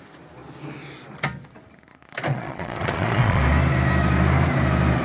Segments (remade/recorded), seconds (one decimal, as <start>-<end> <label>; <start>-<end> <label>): 0.0-2.3 recorded; 2.3-3.4 remade; 3.4-5.0 recorded